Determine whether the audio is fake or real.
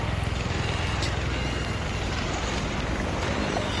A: real